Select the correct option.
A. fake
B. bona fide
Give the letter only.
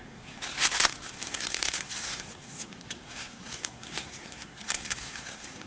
A